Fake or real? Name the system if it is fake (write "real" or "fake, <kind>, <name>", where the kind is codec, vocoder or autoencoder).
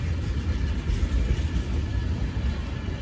real